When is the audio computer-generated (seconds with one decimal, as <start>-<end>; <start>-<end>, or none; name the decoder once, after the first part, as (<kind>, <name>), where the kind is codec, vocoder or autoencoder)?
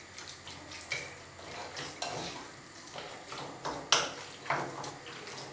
none